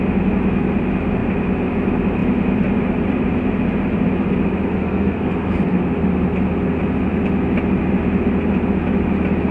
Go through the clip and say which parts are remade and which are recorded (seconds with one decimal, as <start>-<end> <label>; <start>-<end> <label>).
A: 0.0-4.7 recorded; 4.7-5.8 remade; 5.8-9.5 recorded